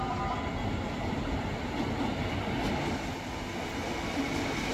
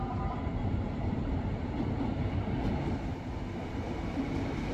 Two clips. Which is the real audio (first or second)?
first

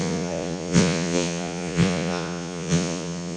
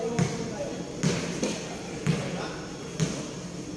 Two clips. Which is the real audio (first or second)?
second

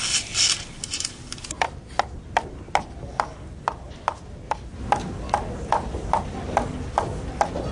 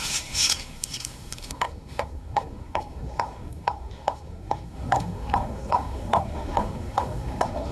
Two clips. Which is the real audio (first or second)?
first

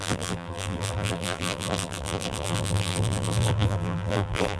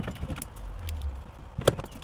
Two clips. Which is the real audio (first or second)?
second